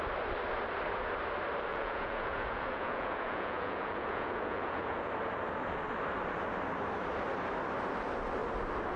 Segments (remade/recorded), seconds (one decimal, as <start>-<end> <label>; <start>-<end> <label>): 0.0-1.7 recorded; 1.7-5.1 remade; 5.1-9.0 recorded